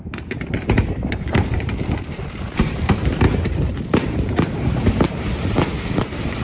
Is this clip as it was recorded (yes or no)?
no